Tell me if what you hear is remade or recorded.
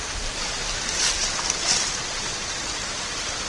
recorded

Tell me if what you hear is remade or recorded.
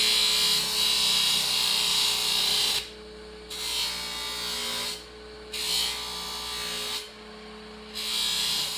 recorded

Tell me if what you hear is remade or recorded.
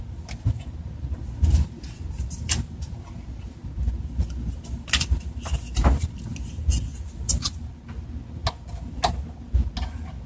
recorded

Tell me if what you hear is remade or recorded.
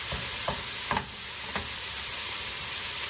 recorded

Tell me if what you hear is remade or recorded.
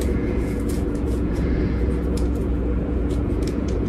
remade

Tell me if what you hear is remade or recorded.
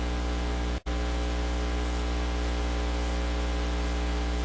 recorded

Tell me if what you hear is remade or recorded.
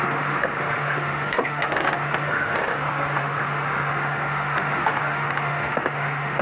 remade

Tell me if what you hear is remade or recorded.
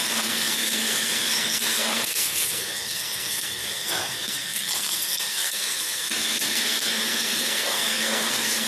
remade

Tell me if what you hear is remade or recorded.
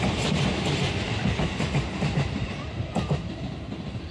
remade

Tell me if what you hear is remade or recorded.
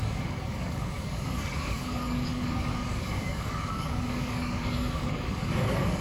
remade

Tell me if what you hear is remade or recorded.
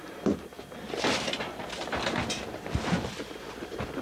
remade